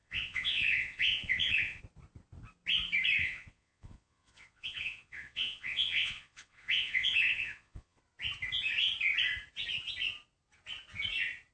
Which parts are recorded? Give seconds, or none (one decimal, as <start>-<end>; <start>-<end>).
1.8-3.2; 8.0-11.5